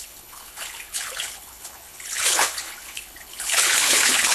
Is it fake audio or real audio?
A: fake